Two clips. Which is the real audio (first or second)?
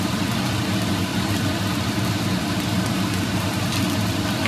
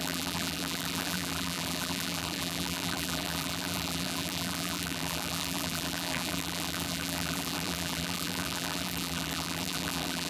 first